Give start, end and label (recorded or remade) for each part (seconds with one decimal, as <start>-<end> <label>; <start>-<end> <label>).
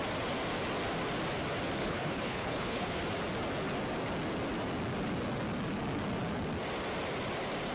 0.0-1.8 recorded; 1.8-3.0 remade; 3.0-7.7 recorded